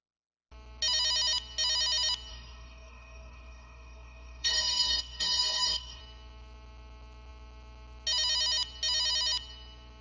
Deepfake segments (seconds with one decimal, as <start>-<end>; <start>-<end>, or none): 2.3-6.0